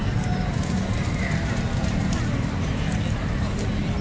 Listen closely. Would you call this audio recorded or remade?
recorded